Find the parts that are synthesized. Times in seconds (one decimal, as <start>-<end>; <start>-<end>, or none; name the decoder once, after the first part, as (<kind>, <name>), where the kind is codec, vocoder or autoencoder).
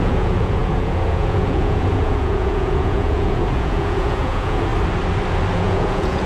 0.0-4.7 (vocoder, Vocos); 5.5-6.3